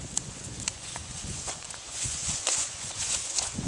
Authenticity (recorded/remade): remade